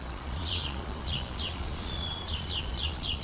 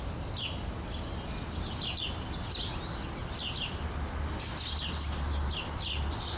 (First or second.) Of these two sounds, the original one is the second